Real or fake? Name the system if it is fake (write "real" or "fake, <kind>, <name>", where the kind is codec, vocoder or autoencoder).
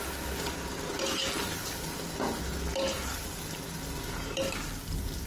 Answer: real